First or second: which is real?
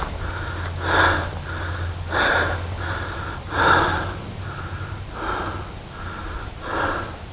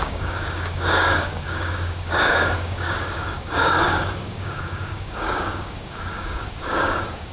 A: first